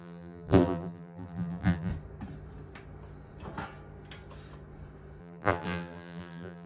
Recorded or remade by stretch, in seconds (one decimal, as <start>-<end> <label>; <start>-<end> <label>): 0.0-1.9 remade; 1.9-5.2 recorded; 5.2-6.7 remade